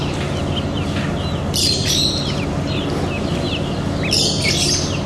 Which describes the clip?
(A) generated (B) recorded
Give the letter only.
B